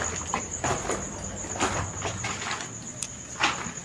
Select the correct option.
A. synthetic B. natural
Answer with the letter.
B